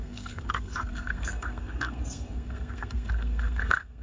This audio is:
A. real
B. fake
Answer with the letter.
B